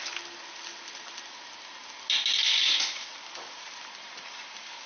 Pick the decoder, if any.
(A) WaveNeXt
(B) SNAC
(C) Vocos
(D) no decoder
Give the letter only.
D